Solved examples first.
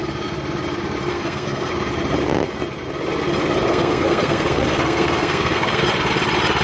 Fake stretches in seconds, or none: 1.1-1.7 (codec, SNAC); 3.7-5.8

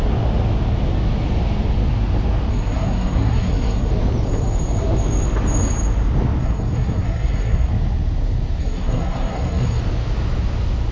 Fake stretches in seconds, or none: 2.5-3.9 (codec, SNAC); 6.4-7.7; 8.6-9.8